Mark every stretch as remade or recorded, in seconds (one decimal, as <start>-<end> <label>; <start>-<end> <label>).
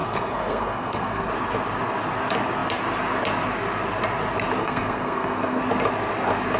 0.0-1.3 remade; 1.3-4.6 recorded; 4.6-5.6 remade; 5.6-6.6 recorded